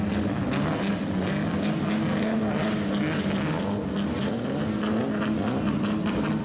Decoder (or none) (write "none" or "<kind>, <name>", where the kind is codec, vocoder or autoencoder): none